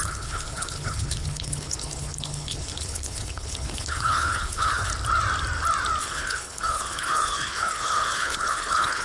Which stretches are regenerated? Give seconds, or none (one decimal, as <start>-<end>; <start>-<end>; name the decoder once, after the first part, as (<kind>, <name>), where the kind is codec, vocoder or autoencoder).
0.0-4.9 (codec, HILCodec); 6.0-9.0